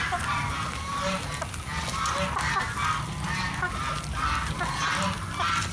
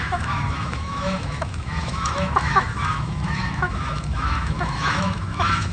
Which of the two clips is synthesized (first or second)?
second